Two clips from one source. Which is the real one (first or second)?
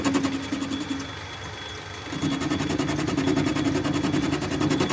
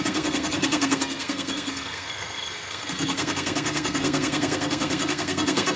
first